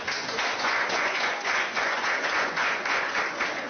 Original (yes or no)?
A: no